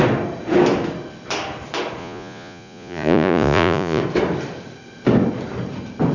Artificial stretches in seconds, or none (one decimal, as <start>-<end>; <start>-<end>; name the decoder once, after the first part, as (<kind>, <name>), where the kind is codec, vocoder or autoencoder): 2.0-4.0 (vocoder, Vocos)